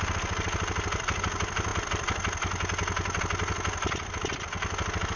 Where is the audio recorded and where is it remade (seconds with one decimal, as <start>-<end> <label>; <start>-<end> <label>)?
0.0-5.2 recorded